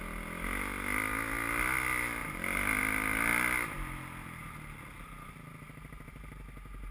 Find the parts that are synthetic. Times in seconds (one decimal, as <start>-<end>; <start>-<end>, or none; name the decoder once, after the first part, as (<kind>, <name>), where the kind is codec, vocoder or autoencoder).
none